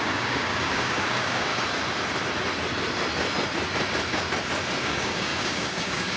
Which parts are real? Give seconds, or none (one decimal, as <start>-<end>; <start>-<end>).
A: 1.5-4.8